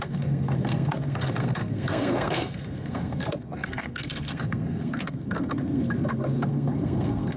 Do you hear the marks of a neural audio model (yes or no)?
yes